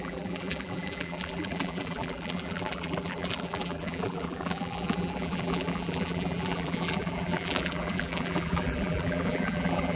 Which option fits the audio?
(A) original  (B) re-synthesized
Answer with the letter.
B